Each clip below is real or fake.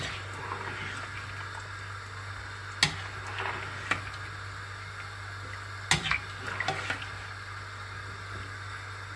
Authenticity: real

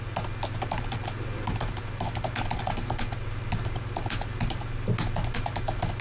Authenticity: real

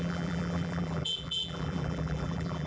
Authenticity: fake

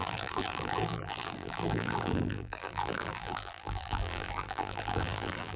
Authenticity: fake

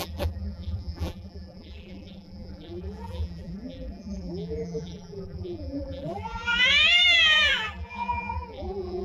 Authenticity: fake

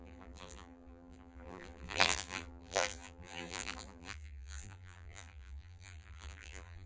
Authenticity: fake